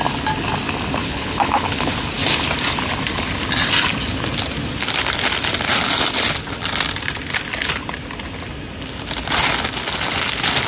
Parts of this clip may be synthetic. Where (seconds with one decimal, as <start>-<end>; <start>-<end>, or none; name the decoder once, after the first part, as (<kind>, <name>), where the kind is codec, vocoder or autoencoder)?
1.0-1.9 (codec, HILCodec)